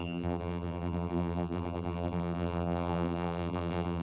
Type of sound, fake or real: fake